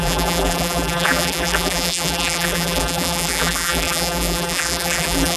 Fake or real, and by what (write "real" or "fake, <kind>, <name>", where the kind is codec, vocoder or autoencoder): fake, vocoder, BigVGAN v2